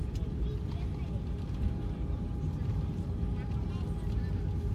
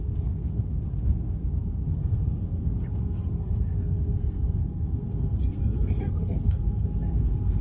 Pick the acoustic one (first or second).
first